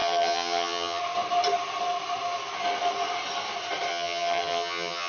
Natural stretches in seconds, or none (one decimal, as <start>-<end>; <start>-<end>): 1.0-3.9